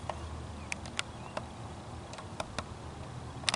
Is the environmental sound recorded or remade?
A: recorded